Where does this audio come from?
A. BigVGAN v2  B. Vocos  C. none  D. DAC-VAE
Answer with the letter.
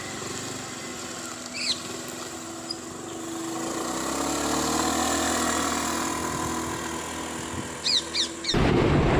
C